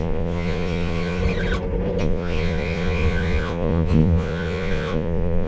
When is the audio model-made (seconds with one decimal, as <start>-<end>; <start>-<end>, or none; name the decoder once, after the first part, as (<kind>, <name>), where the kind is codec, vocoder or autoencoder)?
0.0-1.2 (vocoder, Vocos); 2.0-5.5